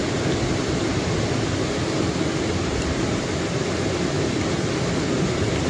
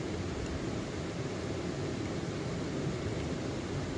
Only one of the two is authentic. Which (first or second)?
second